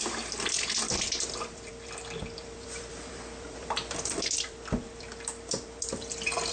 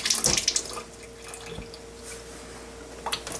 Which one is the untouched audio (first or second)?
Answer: second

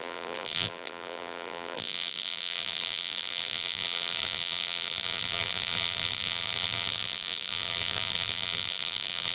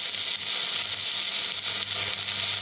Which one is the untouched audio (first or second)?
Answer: second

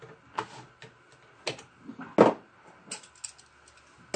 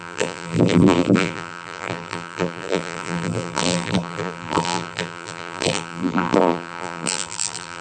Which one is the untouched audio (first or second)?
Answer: first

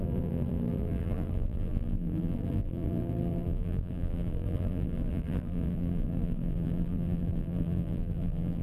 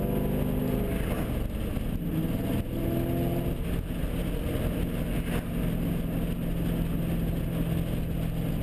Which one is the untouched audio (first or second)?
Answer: second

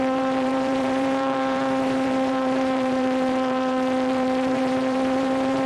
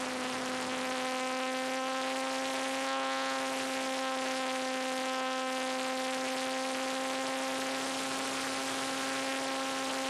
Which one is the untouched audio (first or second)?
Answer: second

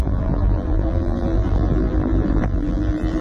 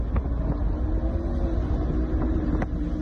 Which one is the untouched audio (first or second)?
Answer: second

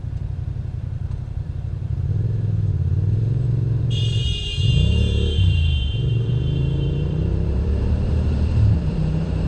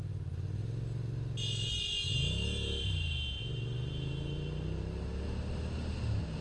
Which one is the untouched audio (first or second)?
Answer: second